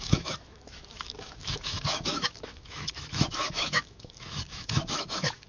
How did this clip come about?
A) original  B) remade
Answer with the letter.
B